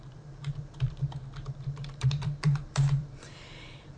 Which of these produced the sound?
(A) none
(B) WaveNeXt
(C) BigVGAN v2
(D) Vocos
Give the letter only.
C